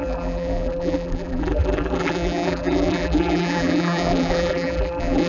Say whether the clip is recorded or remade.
remade